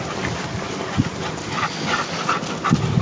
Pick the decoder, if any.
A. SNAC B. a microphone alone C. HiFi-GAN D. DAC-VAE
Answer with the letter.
B